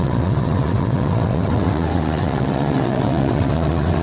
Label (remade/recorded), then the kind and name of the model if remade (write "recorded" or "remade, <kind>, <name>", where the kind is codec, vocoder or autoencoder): remade, vocoder, WaveNeXt